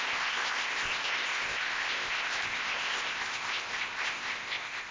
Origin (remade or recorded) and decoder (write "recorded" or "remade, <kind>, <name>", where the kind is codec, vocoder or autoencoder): remade, codec, ZipCodec